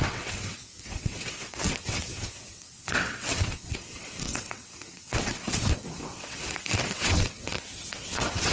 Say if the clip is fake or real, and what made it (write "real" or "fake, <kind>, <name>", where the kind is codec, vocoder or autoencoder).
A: fake, vocoder, WaveNeXt